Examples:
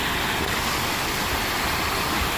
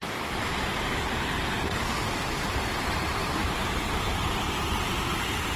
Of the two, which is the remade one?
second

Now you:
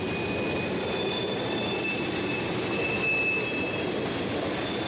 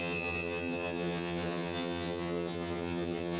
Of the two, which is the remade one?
second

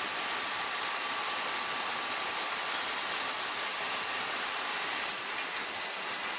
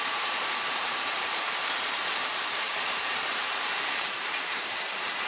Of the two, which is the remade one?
second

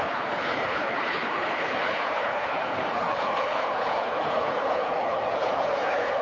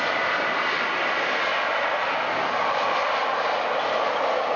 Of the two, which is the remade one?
first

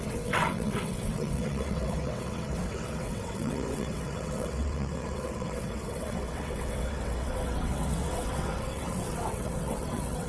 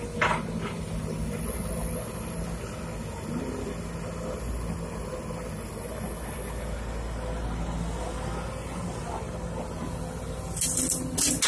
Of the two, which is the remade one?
first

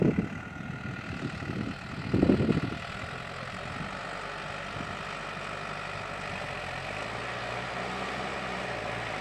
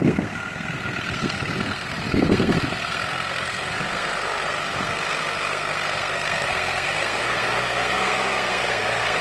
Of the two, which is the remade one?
second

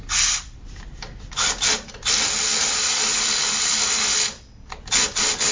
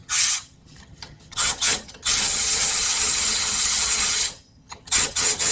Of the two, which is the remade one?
second